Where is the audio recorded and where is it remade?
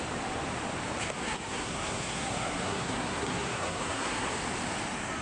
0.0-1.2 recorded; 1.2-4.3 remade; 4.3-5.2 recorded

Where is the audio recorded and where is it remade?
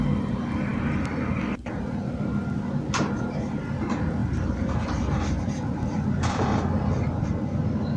0.0-4.2 recorded; 4.2-7.3 remade; 7.3-8.0 recorded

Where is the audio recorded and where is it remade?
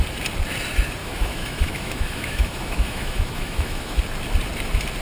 0.0-1.0 recorded; 1.0-4.0 remade; 4.0-5.0 recorded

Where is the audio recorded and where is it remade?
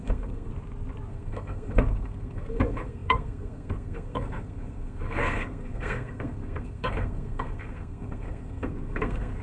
0.0-0.5 remade; 0.5-1.1 recorded; 1.1-9.4 remade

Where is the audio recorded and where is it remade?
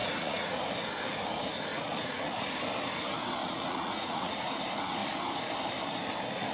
0.0-0.6 remade; 0.6-1.7 recorded; 1.7-2.5 remade; 2.5-3.4 recorded; 3.4-4.6 remade; 4.6-6.5 recorded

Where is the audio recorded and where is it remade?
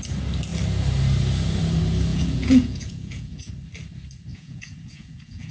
0.0-2.1 recorded; 2.1-3.5 remade; 3.5-4.3 recorded; 4.3-5.5 remade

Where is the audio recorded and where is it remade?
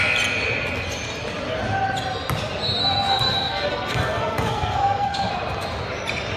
0.0-2.8 recorded; 2.8-5.3 remade; 5.3-6.4 recorded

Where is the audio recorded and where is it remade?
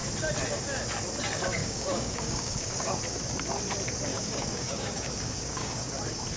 0.0-1.6 recorded; 1.6-2.9 remade; 2.9-4.1 recorded; 4.1-5.9 remade; 5.9-6.4 recorded